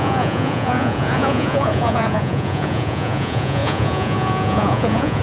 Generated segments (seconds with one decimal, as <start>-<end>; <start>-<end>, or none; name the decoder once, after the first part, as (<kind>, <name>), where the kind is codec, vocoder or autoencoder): 0.0-5.2 (vocoder, Vocos)